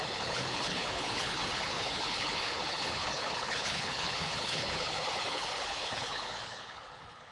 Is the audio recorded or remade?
remade